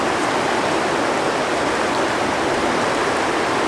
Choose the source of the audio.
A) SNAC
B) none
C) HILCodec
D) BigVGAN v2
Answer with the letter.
B